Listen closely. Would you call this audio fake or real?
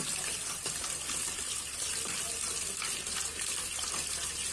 real